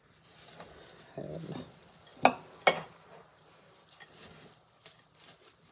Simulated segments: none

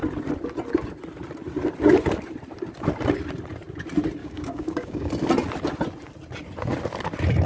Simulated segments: 4.2-5.1 (codec, DAC)